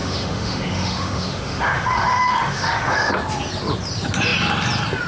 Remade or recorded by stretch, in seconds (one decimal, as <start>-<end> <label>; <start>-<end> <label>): 0.0-3.1 remade; 3.1-5.1 recorded